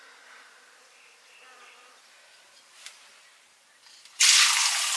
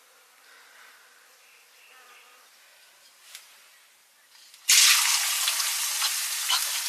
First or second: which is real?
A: second